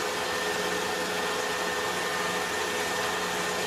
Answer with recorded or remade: recorded